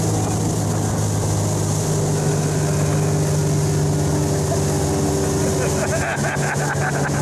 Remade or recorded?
recorded